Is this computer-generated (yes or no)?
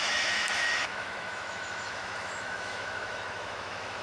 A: yes